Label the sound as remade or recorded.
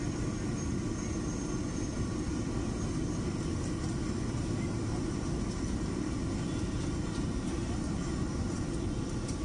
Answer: recorded